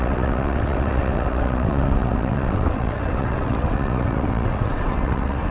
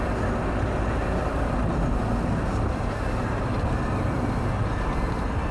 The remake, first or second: first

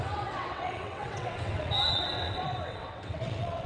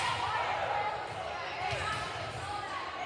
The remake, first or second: first